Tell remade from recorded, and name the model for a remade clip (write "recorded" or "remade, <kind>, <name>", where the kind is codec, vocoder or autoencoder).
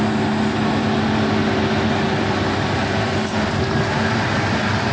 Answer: recorded